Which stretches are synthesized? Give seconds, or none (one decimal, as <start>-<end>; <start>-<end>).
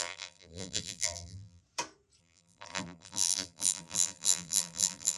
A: 0.0-1.6; 2.2-5.2